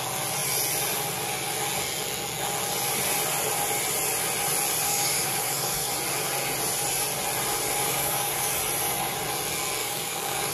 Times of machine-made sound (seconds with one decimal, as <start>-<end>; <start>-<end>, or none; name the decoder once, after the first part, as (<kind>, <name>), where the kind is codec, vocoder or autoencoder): 4.9-5.9 (codec, DAC); 7.8-8.6; 9.8-10.5

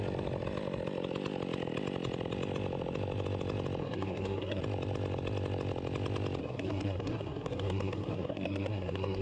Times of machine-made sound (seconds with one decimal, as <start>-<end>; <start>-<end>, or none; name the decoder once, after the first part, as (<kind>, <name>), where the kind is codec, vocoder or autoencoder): 3.8-4.6 (codec, SNAC); 6.4-9.2